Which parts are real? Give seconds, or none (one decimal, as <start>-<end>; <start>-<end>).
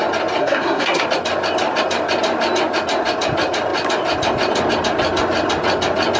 0.0-0.4; 1.0-6.2